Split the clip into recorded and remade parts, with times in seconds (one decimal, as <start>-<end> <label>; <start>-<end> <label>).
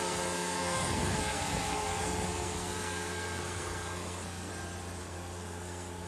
0.0-4.5 remade; 4.5-5.0 recorded; 5.0-6.1 remade